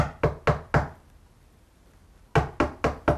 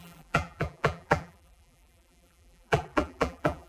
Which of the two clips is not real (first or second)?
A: second